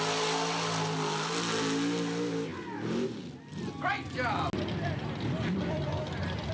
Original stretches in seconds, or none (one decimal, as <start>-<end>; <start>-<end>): 0.0-6.5